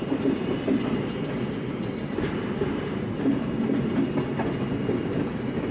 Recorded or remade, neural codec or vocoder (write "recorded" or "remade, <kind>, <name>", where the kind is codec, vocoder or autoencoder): remade, vocoder, BigVGAN v2